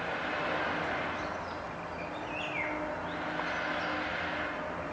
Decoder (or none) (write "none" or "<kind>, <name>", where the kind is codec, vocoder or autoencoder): none